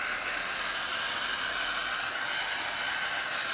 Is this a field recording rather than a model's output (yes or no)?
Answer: yes